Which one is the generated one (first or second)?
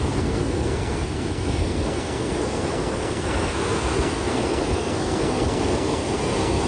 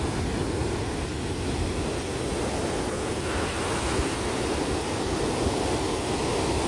first